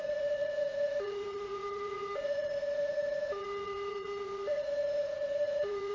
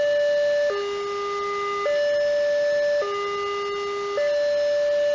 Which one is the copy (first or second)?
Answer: first